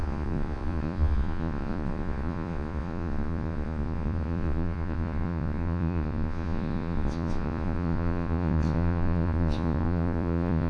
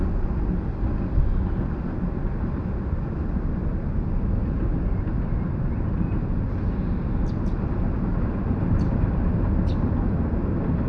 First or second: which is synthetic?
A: first